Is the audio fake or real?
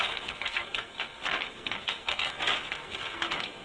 fake